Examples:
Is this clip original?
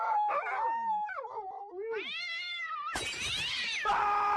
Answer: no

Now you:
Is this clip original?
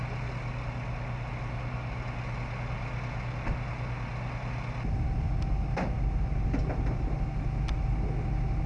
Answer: yes